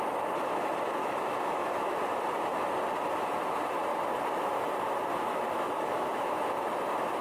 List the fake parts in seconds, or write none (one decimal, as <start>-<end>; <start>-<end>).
1.0-2.0; 5.1-6.3